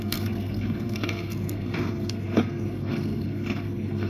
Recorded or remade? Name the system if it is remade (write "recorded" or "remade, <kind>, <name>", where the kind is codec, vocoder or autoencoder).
remade, codec, SNAC